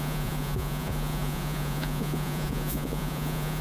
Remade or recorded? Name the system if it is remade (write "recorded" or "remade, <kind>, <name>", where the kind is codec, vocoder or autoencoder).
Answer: remade, vocoder, Vocos